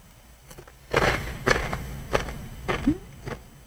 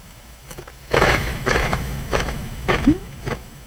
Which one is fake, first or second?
second